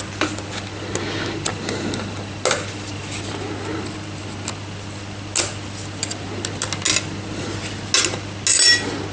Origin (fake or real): real